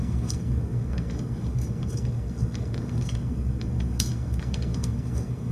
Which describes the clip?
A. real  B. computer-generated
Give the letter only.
B